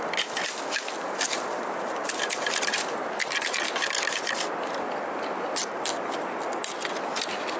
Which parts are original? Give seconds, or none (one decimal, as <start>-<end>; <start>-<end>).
0.0-7.6